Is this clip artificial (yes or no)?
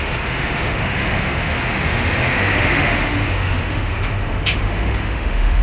yes